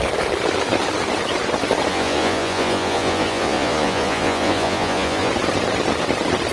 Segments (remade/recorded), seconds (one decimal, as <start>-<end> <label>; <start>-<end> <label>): 0.0-1.9 recorded; 1.9-5.3 remade; 5.3-6.5 recorded